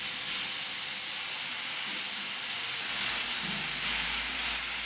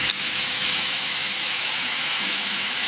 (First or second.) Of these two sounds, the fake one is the second